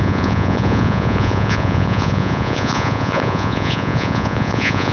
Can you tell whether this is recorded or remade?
remade